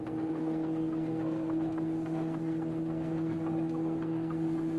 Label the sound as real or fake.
fake